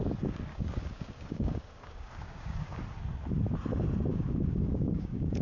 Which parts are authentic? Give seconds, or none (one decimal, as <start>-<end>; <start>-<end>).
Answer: 0.0-0.5; 2.8-4.1